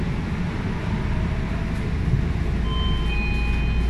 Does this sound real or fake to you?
real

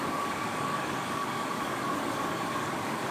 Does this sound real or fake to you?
fake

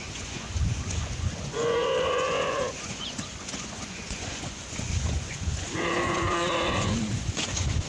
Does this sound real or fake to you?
fake